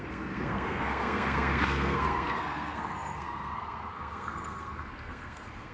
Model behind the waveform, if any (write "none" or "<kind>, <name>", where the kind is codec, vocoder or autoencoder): codec, SNAC